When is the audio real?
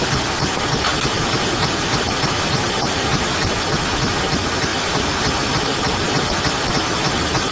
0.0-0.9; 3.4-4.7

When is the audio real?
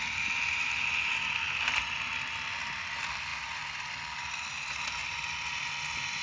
0.0-5.0; 5.5-6.2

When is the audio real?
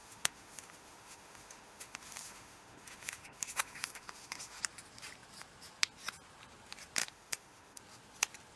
4.6-7.0; 7.8-8.6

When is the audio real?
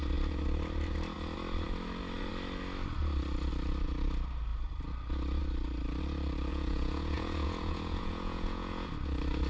0.0-6.5; 8.9-9.5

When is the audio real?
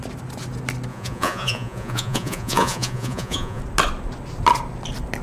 0.0-0.9; 3.6-5.2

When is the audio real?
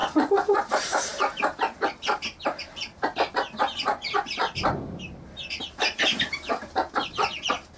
0.0-0.7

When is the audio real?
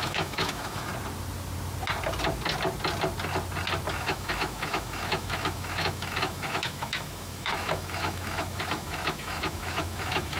0.9-3.9